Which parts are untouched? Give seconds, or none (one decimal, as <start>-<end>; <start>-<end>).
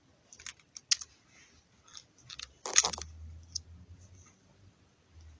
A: 0.0-5.4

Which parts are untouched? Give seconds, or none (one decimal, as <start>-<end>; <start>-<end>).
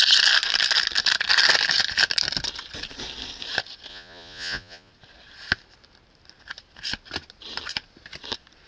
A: 0.0-3.9; 4.9-8.7